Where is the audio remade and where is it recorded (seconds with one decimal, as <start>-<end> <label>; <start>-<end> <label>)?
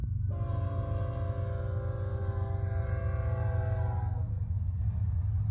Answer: 0.0-5.5 recorded